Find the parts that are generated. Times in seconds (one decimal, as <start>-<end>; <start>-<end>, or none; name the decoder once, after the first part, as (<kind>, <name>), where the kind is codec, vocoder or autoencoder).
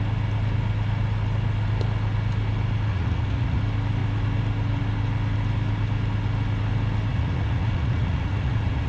2.9-3.6 (vocoder, Vocos); 7.1-8.9